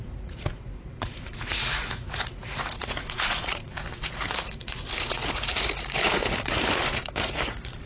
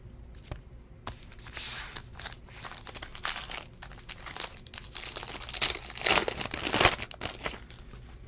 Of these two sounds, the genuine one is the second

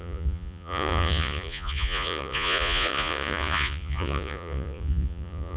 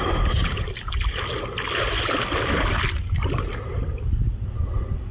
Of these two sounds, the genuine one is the second